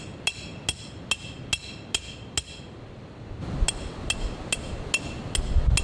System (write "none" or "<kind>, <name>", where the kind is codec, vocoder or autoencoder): none